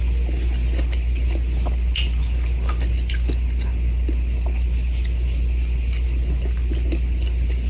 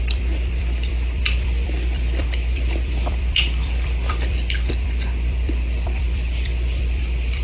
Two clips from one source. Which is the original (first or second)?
first